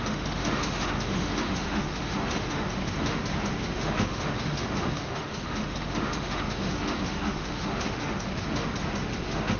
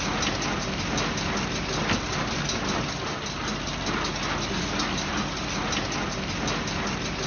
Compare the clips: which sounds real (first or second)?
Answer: second